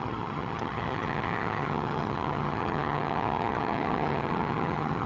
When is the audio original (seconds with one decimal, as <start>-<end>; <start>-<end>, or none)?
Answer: none